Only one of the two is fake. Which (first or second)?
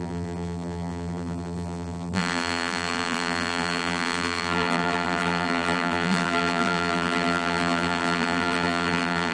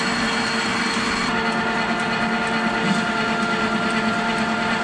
first